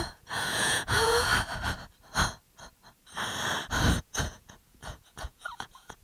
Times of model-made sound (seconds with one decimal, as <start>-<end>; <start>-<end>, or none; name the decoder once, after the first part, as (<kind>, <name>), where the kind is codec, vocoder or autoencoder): 0.0-1.3 (vocoder, Vocos); 4.0-6.0